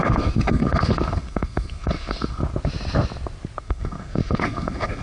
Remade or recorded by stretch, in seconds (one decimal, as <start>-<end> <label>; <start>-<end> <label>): 0.0-2.4 remade; 2.4-3.6 recorded; 3.6-5.0 remade